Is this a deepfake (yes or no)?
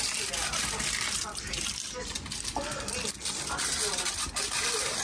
no